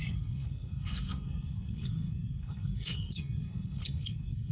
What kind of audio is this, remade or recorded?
remade